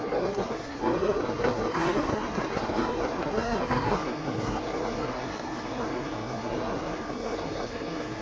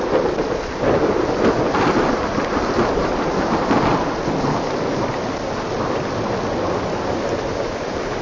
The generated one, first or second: first